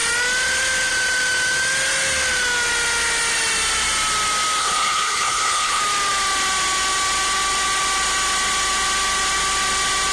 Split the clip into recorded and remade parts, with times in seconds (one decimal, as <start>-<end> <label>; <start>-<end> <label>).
0.0-4.6 recorded; 4.6-5.8 remade; 5.8-10.1 recorded